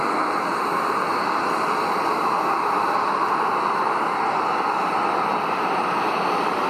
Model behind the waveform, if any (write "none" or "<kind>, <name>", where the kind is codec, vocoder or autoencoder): none